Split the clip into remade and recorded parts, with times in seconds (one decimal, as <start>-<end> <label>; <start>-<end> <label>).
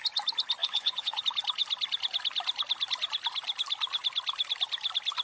0.0-0.6 recorded; 0.6-1.2 remade; 1.2-5.2 recorded